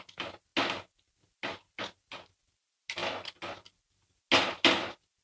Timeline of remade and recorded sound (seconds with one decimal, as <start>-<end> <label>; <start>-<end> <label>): 0.0-5.2 recorded